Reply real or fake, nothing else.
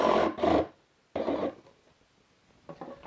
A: real